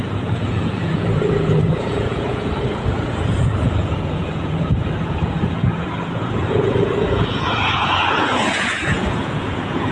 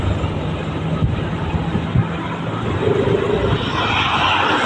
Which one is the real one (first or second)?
second